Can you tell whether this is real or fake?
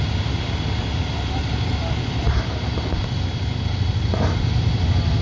real